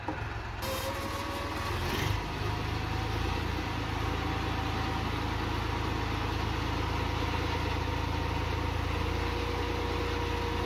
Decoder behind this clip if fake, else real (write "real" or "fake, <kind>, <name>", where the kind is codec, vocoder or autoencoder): real